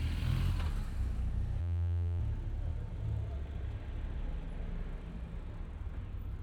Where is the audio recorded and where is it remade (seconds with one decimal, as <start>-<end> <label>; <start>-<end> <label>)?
0.0-1.6 recorded; 1.6-2.2 remade; 2.2-6.4 recorded